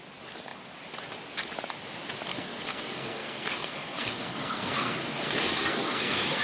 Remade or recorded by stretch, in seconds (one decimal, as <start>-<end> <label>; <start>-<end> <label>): 0.0-2.3 recorded; 2.3-6.4 remade